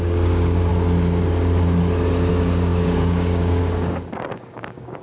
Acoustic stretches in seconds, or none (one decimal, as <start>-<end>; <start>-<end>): 0.7-2.3